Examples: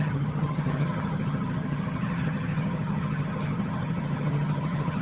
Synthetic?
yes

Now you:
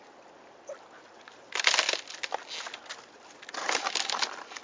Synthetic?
no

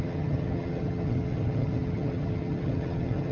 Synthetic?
yes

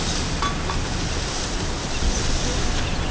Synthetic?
no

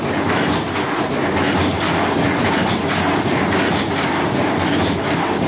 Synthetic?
no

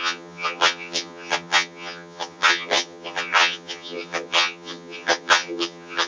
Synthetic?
yes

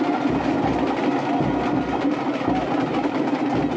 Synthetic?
no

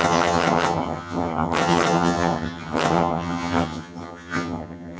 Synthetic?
yes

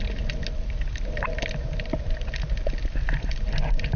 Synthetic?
no